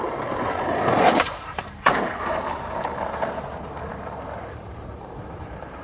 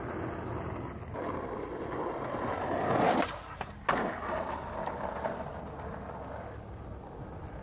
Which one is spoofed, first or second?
first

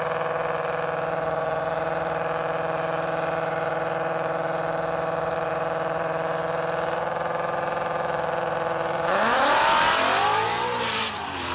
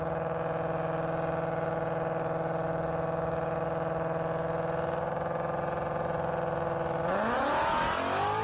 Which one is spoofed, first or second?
first